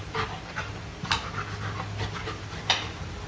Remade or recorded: recorded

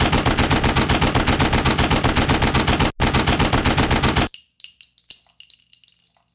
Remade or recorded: recorded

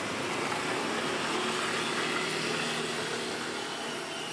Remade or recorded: recorded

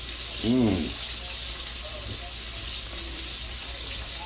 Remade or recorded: recorded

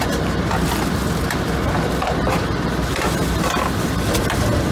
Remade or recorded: recorded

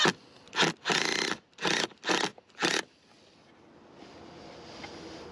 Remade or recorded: recorded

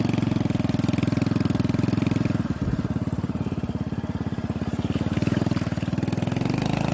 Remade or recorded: recorded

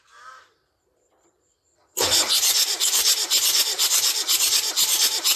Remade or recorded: remade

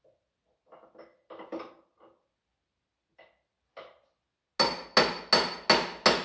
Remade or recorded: recorded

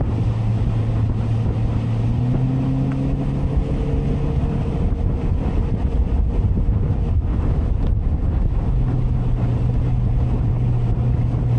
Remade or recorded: recorded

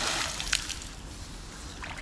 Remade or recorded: recorded